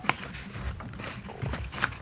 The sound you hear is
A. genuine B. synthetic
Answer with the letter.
B